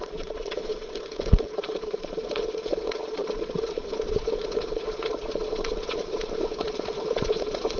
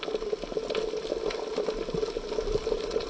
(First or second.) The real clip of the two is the second